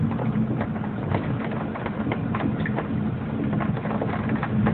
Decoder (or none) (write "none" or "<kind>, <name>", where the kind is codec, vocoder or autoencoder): none